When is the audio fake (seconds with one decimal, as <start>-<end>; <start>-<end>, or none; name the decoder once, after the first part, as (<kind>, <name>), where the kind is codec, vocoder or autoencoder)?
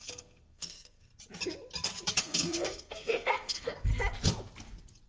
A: 0.0-1.1 (codec, SNAC); 2.2-3.9